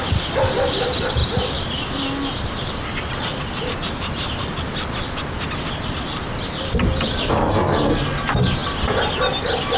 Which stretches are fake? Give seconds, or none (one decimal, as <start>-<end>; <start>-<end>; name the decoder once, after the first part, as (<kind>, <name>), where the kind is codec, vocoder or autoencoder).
none